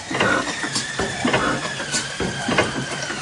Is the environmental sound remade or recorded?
remade